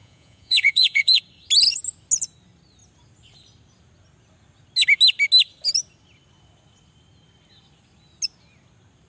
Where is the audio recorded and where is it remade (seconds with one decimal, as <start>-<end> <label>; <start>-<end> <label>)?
0.0-1.2 remade; 1.2-9.1 recorded